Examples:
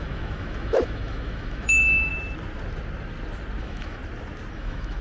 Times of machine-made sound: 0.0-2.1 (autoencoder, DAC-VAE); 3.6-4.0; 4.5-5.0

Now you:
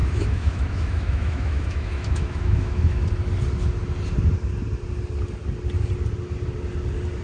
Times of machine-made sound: 0.0-3.0 (autoencoder, DAC-VAE)

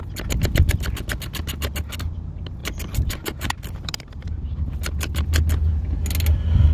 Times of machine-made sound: 2.6-4.8 (vocoder, BigVGAN v2)

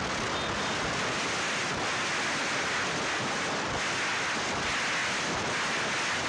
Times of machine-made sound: none

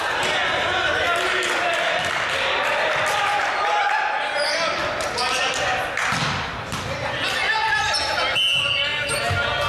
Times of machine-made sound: none

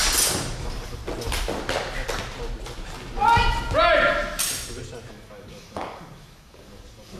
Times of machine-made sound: 0.6-1.0 (codec, DAC); 5.1-7.2

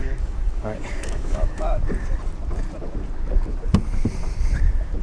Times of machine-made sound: 0.0-1.8 (codec, DAC)

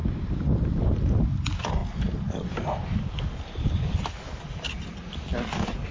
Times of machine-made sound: 0.0-0.8 (vocoder, BigVGAN v2)